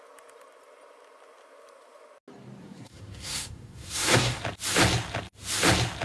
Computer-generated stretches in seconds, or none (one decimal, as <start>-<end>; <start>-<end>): 2.6-4.4